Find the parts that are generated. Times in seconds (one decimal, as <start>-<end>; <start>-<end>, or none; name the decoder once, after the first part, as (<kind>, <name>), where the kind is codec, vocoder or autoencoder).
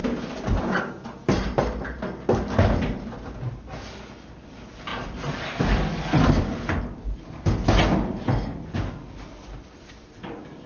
4.9-6.4 (vocoder, BigVGAN v2); 8.5-9.2